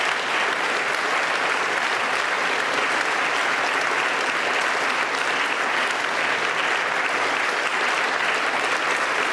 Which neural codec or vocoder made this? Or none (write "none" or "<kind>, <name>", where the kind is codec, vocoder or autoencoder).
none